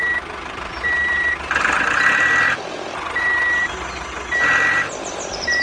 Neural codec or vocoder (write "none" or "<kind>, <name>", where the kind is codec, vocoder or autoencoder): vocoder, BigVGAN v2